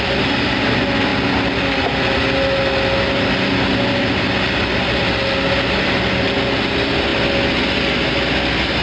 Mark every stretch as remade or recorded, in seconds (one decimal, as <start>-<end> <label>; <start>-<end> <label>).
0.0-8.8 recorded